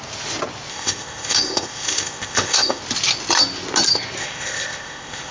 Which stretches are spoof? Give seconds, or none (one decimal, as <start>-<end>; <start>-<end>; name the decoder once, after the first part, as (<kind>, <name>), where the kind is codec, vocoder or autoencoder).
0.7-2.8 (codec, ZipCodec); 4.2-5.3